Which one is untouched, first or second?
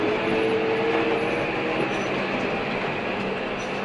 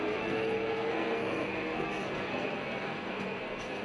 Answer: first